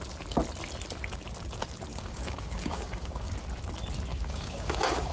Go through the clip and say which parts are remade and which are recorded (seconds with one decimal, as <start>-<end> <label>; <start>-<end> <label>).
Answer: 0.0-1.9 recorded; 1.9-3.3 remade; 3.3-4.1 recorded; 4.1-5.1 remade